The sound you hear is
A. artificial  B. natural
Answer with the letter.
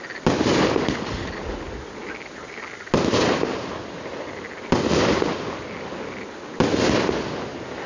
B